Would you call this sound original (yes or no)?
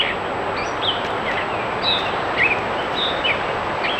yes